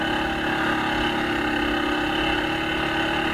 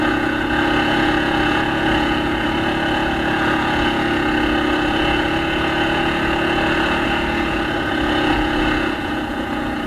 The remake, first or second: second